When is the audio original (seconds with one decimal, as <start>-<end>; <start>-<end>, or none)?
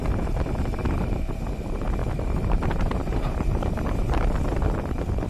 0.0-2.0; 4.2-5.3